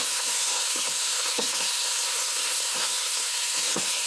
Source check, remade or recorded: remade